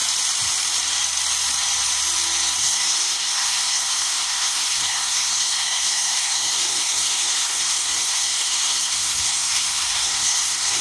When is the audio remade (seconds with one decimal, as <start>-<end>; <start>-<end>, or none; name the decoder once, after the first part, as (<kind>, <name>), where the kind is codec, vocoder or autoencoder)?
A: 2.6-10.8 (codec, SNAC)